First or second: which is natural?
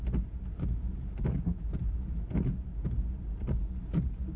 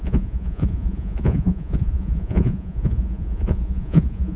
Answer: first